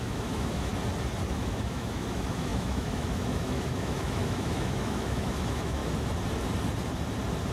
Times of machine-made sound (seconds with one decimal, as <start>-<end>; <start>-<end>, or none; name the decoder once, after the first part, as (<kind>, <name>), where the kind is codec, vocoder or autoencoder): 0.0-0.7 (autoencoder, DAC-VAE); 1.3-5.8